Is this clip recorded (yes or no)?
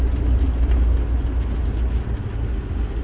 yes